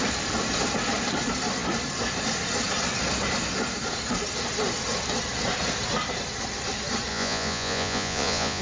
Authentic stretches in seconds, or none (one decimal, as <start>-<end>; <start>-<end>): 0.0-7.1